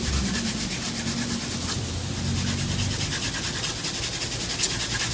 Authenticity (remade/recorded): recorded